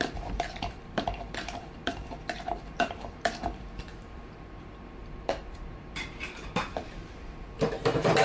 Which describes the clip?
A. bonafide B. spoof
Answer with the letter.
B